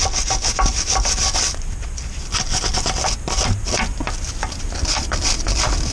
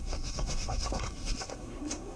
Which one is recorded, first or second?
first